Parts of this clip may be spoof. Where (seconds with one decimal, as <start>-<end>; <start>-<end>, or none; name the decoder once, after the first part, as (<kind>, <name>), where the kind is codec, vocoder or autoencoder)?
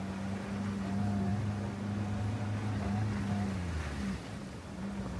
none